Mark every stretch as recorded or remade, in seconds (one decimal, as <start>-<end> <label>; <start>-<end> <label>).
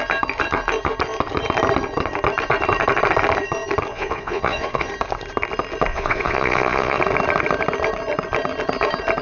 0.0-3.9 recorded; 3.9-4.9 remade; 4.9-5.9 recorded; 5.9-7.0 remade; 7.0-9.2 recorded